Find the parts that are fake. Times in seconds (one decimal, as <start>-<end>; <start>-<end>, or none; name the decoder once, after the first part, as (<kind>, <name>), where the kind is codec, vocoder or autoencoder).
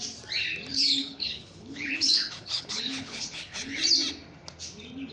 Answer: 0.7-3.8 (codec, HILCodec)